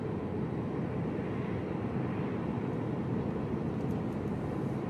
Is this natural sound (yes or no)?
yes